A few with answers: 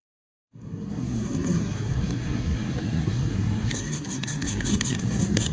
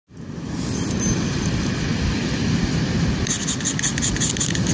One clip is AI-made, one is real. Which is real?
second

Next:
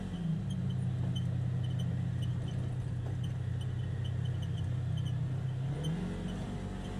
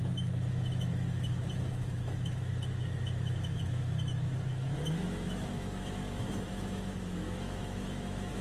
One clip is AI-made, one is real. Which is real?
first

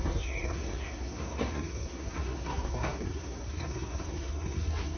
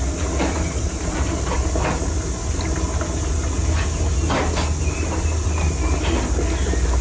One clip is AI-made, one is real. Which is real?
second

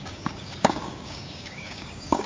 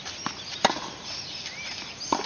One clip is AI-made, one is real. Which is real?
second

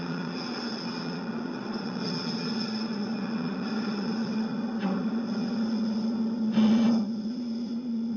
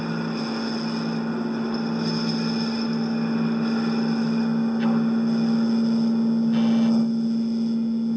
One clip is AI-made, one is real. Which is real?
second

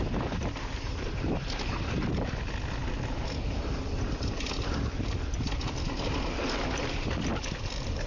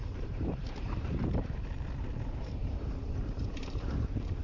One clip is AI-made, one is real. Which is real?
first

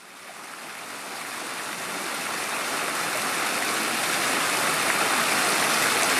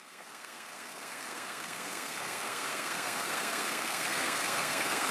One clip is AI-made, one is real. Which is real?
first